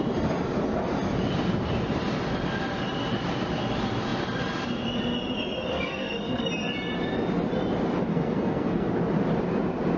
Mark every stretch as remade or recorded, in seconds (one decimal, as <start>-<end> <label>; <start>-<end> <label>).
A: 0.0-5.7 recorded; 5.7-6.5 remade; 6.5-8.1 recorded; 8.1-8.9 remade; 8.9-10.0 recorded